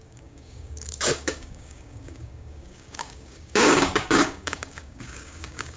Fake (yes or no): yes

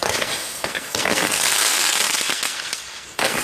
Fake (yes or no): yes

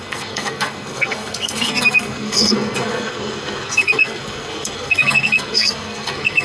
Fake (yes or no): yes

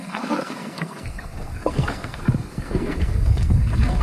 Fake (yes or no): yes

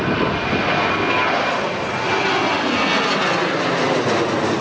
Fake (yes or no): no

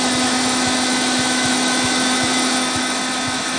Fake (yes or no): yes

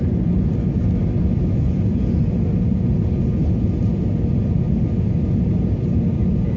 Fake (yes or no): no